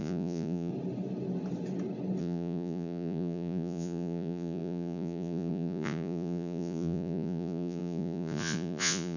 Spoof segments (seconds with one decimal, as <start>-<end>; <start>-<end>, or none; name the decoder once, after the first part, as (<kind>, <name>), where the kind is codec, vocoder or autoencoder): 0.0-0.7 (vocoder, Vocos); 2.2-9.2